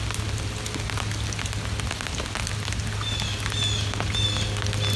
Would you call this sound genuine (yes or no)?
yes